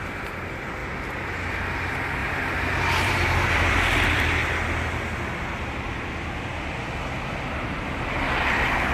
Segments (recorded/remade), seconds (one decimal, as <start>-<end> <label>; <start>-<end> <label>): 0.0-2.2 remade; 2.2-3.0 recorded; 3.0-4.4 remade; 4.4-7.4 recorded; 7.4-8.9 remade